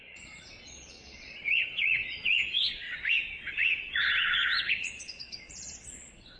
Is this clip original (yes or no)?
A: no